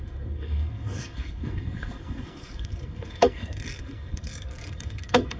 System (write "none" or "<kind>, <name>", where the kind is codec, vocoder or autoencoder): codec, SNAC